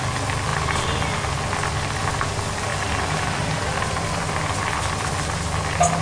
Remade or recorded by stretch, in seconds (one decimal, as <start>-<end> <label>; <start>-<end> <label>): 0.0-6.0 recorded

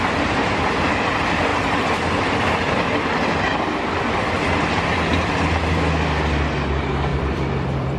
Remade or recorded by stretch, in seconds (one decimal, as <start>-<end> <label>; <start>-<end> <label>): 0.0-7.1 recorded; 7.1-8.0 remade